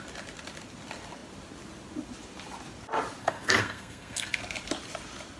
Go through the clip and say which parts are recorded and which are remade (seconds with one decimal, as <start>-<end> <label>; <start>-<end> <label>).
0.0-3.2 recorded; 3.2-4.4 remade; 4.4-5.4 recorded